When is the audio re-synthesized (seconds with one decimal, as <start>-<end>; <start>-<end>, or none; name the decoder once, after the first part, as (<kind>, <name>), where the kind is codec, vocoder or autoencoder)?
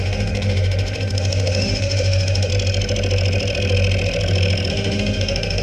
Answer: 0.0-2.5 (autoencoder, DAC-VAE); 4.7-5.6